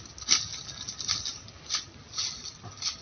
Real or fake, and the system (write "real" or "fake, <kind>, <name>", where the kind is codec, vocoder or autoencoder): real